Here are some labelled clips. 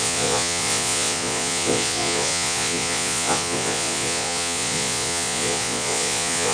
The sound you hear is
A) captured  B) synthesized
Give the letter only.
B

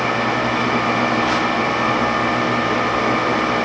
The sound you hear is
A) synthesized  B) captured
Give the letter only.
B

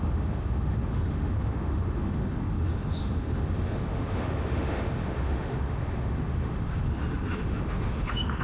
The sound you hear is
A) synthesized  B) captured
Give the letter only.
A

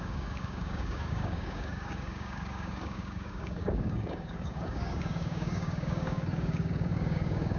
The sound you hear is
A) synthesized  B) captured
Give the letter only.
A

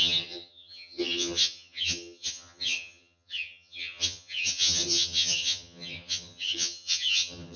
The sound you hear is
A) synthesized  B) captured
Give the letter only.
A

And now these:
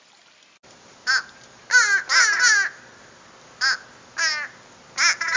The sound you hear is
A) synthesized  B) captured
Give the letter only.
B